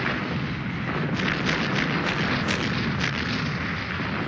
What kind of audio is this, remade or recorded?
recorded